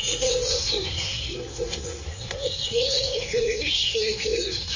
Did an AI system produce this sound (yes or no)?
yes